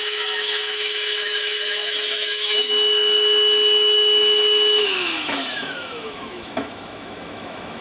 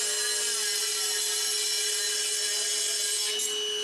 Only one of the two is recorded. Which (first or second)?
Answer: second